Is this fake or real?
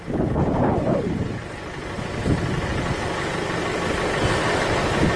real